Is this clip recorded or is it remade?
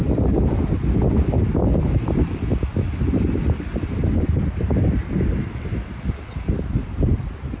recorded